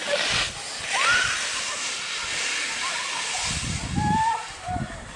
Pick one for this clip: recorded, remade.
recorded